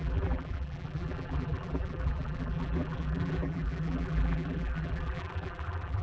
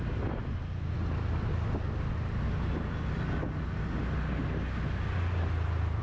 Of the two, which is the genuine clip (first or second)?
second